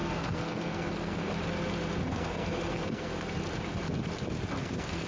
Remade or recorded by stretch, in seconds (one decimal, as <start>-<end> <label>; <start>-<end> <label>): 0.0-1.3 remade; 1.3-2.0 recorded; 2.0-3.1 remade; 3.1-4.6 recorded; 4.6-5.1 remade